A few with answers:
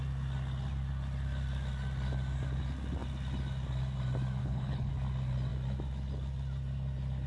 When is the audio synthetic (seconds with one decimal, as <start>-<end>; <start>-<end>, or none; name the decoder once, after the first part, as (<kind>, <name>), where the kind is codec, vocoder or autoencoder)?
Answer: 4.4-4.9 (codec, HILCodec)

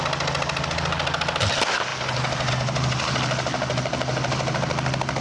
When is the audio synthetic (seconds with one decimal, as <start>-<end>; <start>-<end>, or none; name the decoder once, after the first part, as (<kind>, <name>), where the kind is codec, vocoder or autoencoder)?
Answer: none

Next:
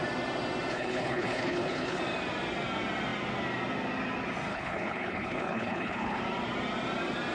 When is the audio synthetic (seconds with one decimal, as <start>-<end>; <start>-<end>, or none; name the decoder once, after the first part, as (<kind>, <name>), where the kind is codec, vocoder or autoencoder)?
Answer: 0.7-2.0 (codec, HILCodec); 4.5-6.2